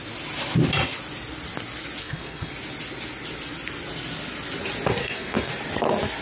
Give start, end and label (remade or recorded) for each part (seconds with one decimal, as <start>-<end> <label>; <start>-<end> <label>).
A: 0.0-2.0 recorded; 2.0-2.5 remade; 2.5-5.0 recorded; 5.0-5.5 remade; 5.5-6.2 recorded